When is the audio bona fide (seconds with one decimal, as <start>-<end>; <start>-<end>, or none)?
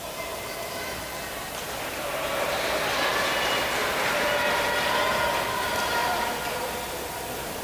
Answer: 0.0-6.0